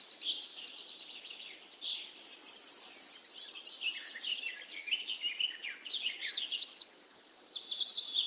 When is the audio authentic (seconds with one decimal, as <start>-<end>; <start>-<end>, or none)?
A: 0.0-5.6; 6.9-8.3